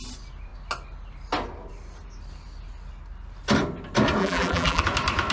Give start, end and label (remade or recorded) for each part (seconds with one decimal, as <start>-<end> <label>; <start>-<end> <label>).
0.0-4.2 recorded; 4.2-4.8 remade; 4.8-5.3 recorded